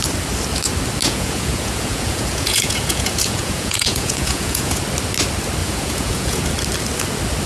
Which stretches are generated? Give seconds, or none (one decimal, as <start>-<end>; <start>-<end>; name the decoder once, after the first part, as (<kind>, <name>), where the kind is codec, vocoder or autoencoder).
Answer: 1.0-4.8 (vocoder, Vocos); 5.6-6.4